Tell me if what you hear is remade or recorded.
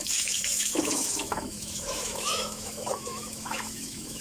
remade